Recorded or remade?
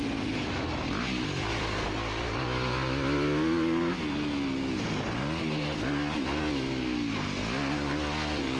recorded